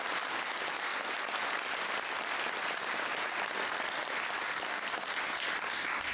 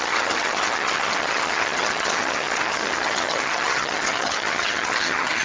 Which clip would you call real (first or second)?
first